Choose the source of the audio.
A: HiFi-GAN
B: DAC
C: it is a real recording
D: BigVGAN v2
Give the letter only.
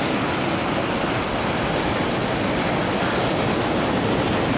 C